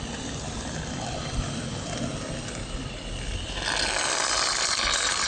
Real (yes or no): yes